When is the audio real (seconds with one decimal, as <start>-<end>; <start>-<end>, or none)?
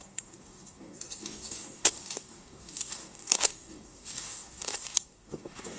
none